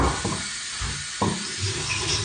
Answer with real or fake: real